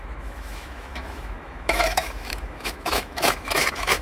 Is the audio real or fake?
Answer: fake